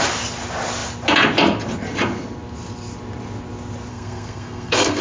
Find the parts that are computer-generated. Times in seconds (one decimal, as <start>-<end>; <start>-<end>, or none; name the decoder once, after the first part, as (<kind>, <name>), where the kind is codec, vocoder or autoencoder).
3.9-5.0 (codec, SNAC)